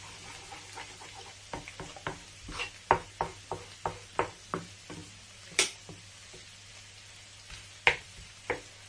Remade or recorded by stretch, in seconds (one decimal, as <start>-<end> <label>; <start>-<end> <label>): 0.0-8.9 recorded